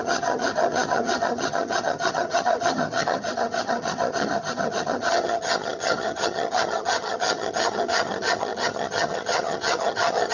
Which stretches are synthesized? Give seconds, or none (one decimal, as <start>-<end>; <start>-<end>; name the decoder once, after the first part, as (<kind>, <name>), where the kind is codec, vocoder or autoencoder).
0.0-10.3 (vocoder, HiFi-GAN)